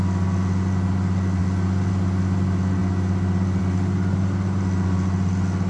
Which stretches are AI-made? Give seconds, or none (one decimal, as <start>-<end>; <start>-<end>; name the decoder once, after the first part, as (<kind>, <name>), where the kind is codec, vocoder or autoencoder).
none

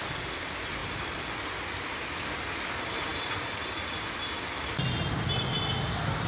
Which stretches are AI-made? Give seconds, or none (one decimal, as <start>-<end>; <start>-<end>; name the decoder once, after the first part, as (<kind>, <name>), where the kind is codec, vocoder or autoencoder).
none

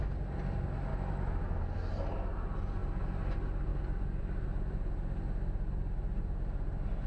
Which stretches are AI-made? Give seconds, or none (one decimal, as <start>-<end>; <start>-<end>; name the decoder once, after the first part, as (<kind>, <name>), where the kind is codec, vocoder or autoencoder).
0.9-1.6 (autoencoder, DAC-VAE)

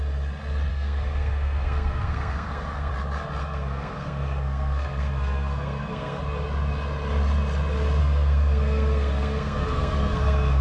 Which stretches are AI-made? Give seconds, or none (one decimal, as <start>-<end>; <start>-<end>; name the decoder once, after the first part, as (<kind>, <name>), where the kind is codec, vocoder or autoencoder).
0.7-2.9 (codec, SNAC); 3.4-6.2; 8.0-10.6

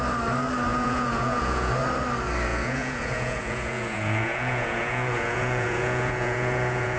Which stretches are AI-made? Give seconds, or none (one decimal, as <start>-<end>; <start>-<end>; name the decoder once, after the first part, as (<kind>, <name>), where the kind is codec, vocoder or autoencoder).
0.7-1.7 (vocoder, Vocos); 2.5-7.0

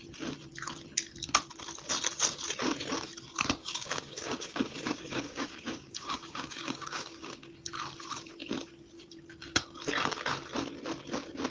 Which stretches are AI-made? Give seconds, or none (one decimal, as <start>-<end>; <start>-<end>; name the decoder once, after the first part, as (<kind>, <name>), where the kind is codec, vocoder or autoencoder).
3.6-7.4 (codec, DAC)